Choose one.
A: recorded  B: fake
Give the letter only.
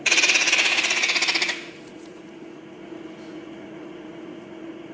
B